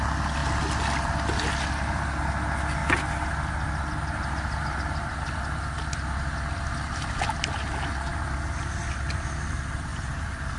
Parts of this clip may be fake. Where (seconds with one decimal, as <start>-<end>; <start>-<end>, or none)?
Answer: none